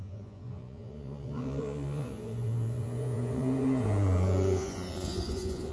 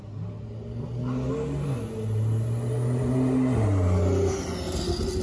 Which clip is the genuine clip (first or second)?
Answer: second